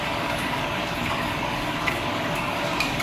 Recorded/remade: remade